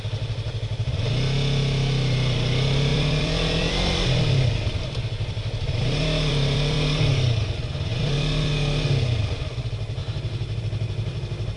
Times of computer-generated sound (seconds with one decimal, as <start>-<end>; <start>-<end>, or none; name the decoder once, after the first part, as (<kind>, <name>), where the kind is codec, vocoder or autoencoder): 2.9-6.8 (vocoder, BigVGAN v2); 7.9-8.5; 10.0-10.6